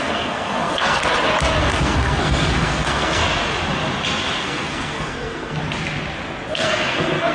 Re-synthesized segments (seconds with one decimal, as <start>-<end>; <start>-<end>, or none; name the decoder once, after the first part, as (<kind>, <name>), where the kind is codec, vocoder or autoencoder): 0.0-1.0 (codec, SNAC); 1.6-3.2; 4.4-5.6; 6.5-7.3